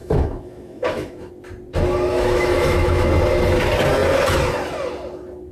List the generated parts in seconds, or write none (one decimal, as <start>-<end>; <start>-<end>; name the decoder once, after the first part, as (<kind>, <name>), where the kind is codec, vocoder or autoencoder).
0.0-1.3 (autoencoder, DAC-VAE); 2.1-3.1